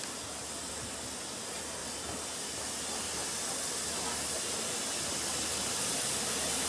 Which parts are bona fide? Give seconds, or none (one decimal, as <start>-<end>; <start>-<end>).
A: 0.0-6.7